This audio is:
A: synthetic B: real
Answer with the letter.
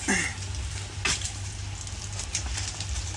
B